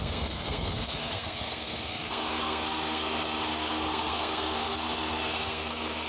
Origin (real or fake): fake